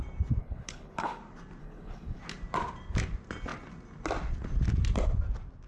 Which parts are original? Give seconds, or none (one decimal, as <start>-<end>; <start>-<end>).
0.0-0.4; 1.2-1.6; 2.2-5.7